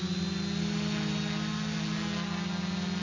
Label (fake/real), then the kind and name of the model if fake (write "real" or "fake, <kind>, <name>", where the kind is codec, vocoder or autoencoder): real